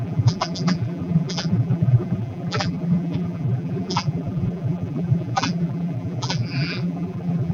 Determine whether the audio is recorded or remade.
remade